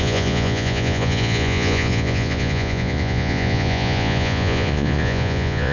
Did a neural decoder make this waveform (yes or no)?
yes